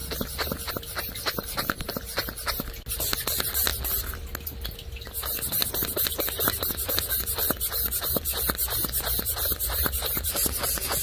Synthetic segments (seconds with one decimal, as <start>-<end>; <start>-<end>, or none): none